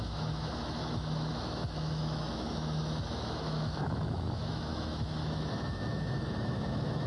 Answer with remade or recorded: remade